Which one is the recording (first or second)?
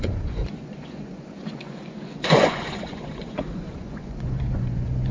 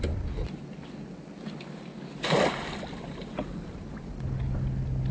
second